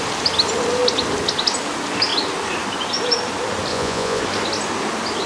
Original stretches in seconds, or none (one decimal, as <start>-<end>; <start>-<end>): 0.0-3.7; 4.2-5.3